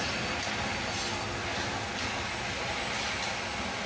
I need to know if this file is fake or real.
real